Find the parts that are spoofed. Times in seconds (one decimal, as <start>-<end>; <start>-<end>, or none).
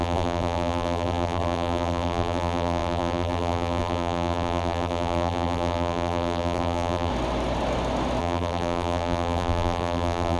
0.0-7.1; 8.2-10.4